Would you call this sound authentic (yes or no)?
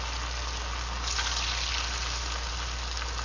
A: yes